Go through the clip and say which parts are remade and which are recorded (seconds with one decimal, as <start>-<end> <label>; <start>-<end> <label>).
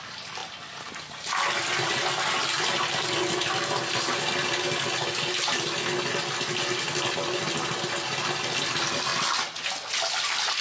0.0-10.6 recorded